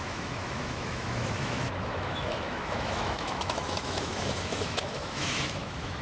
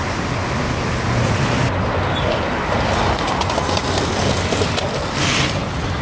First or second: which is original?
second